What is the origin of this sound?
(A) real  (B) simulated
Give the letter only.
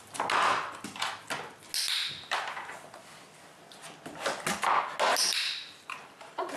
A